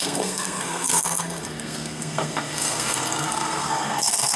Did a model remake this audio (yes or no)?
yes